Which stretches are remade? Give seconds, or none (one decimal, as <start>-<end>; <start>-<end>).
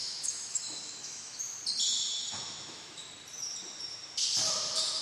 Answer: 0.0-1.4; 2.2-3.1